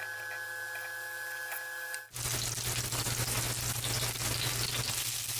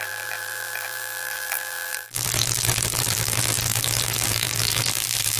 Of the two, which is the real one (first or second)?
first